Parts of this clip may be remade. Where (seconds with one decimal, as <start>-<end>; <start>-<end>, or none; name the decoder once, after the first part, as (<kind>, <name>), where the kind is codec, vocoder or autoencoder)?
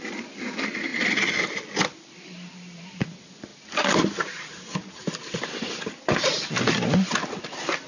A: none